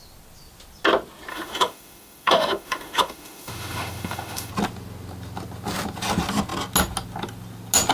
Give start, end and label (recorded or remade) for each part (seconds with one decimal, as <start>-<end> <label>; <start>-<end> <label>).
0.0-1.3 recorded; 1.3-4.5 remade; 4.5-7.9 recorded